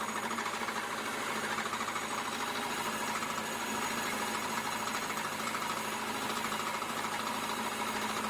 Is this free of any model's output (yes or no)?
yes